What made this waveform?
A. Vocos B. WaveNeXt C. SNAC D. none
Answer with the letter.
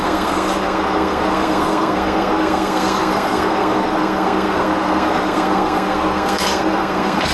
C